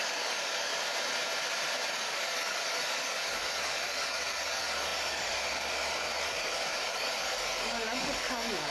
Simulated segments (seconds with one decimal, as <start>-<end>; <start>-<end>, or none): 0.0-0.7; 1.9-8.7

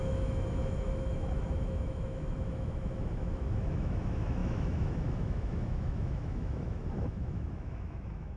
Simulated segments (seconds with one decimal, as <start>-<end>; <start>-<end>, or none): 0.0-8.4